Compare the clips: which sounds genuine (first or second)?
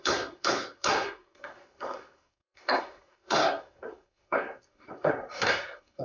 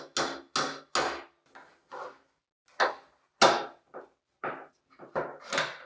second